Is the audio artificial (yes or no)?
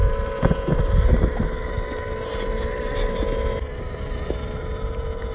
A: no